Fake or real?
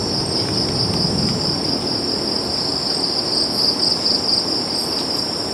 real